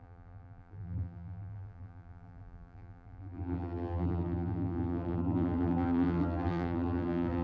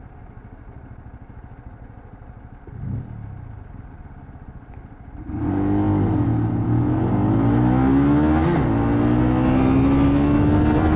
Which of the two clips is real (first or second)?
second